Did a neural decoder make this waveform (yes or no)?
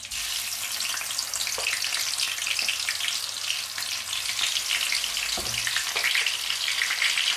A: no